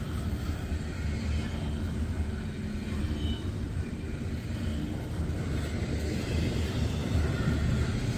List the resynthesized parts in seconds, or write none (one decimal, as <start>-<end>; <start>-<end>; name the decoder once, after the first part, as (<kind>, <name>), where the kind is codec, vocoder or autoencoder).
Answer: 0.0-0.4 (vocoder, BigVGAN v2); 3.0-4.7; 6.3-8.2